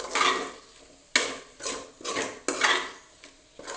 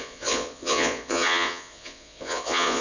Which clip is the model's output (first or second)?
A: second